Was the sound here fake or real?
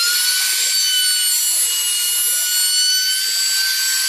real